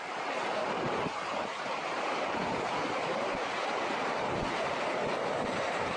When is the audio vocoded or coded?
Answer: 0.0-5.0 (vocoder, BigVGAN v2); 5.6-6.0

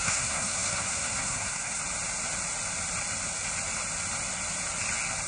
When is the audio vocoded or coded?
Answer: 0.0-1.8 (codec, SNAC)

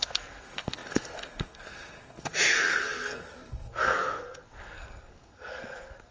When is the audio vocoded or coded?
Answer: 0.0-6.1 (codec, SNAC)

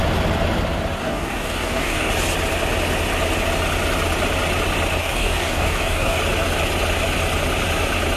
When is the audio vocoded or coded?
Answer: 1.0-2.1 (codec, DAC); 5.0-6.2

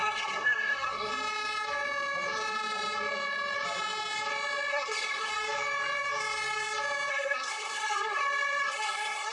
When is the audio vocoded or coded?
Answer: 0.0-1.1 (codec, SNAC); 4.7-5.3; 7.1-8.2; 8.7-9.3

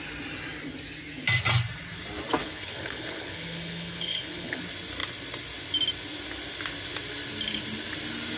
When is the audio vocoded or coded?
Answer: 2.4-4.6 (codec, HILCodec)